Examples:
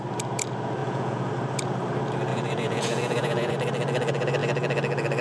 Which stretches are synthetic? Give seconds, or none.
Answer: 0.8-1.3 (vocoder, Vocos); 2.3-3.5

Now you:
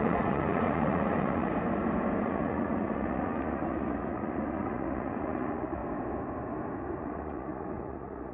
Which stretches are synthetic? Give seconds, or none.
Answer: 0.0-1.5 (vocoder, Vocos); 2.2-5.8; 7.0-8.3

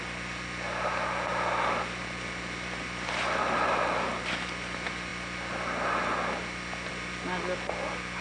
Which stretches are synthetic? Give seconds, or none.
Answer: none

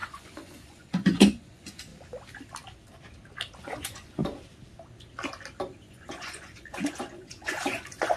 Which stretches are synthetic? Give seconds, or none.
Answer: 0.0-1.9 (vocoder, Vocos); 3.6-4.2; 5.7-8.2

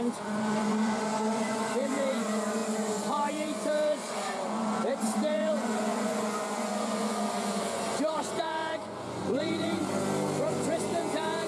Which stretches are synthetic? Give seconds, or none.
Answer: 0.0-9.8 (vocoder, Vocos); 10.4-11.5

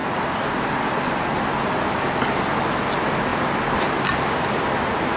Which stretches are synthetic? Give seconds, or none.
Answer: none

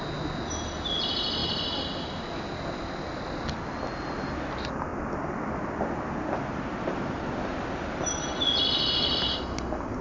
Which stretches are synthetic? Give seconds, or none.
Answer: none

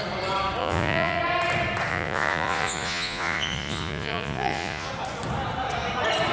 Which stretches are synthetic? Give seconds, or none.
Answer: 0.6-1.2 (vocoder, Vocos); 1.9-4.9